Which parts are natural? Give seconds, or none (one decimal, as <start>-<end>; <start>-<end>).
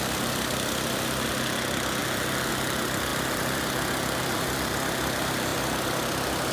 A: 0.0-6.5